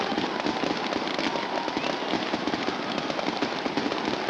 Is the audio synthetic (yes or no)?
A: no